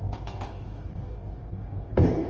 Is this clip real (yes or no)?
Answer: no